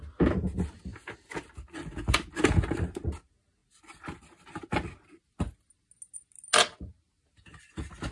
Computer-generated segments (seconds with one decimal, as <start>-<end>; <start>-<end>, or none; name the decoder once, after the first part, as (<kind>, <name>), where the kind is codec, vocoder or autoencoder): none